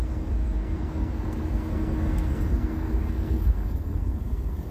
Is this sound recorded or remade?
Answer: remade